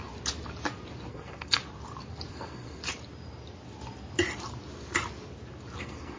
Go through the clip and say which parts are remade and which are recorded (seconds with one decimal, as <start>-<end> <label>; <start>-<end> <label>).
0.0-1.1 recorded; 1.1-1.6 remade; 1.6-2.3 recorded; 2.3-2.8 remade; 2.8-5.8 recorded; 5.8-6.2 remade